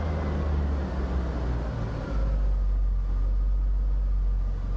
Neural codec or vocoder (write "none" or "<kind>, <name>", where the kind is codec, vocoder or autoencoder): none